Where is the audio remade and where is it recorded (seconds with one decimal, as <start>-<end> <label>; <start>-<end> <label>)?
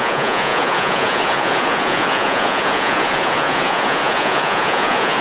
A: 0.0-5.2 remade